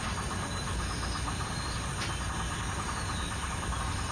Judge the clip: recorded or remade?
recorded